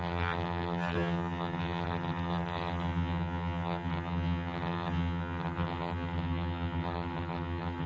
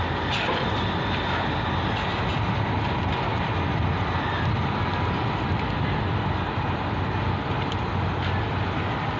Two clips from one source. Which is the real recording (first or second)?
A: second